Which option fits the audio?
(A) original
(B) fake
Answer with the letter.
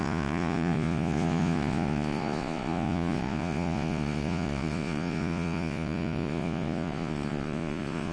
B